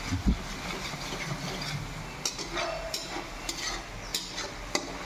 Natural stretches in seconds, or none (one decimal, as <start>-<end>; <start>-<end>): 0.0-5.1